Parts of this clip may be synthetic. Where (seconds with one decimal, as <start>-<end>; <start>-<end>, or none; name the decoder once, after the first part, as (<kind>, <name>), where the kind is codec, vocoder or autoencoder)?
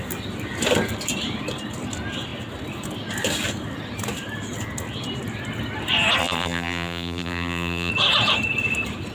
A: 6.2-7.9 (vocoder, BigVGAN v2)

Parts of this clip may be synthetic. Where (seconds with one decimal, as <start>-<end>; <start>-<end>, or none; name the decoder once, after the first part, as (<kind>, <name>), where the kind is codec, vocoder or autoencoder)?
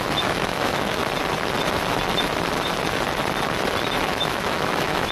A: 0.0-1.0 (autoencoder, DAC-VAE); 4.1-5.1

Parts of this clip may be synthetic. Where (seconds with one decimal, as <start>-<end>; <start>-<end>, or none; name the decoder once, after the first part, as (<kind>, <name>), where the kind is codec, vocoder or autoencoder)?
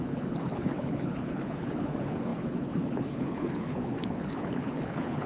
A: 0.0-5.3 (codec, HILCodec)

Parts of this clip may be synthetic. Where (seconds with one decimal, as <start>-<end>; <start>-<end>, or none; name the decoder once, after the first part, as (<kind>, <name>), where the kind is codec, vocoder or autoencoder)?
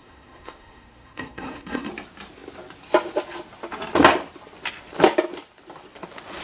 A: 0.0-1.9 (codec, SNAC)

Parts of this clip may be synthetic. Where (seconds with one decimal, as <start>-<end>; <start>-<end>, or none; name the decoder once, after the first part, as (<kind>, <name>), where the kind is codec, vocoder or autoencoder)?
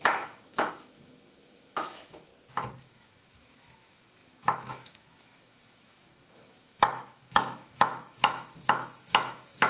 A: 0.0-2.3 (autoencoder, DAC-VAE); 2.8-9.7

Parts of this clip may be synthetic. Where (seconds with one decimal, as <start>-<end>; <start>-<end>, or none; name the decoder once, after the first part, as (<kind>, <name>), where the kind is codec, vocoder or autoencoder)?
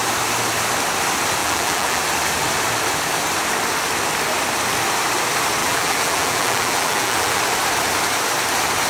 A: 1.4-2.0 (vocoder, BigVGAN v2); 5.6-7.4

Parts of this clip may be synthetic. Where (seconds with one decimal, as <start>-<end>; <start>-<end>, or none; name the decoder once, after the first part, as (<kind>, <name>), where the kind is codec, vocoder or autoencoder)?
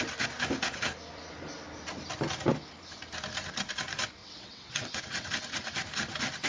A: 4.2-5.3 (vocoder, WaveNeXt)